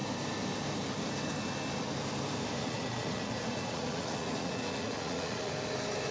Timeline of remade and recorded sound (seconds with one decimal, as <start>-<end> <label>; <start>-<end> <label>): 0.0-2.6 recorded; 2.6-5.5 remade; 5.5-6.1 recorded